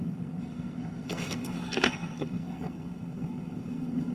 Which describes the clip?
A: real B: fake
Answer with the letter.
B